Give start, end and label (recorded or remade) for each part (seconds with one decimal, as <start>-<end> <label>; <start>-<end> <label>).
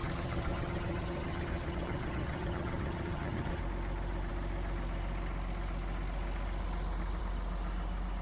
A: 0.0-3.6 remade; 3.6-8.2 recorded